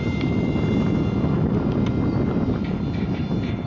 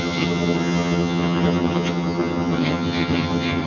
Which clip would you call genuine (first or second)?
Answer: first